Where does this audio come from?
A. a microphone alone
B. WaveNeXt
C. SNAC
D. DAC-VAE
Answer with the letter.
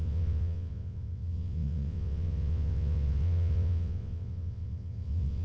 B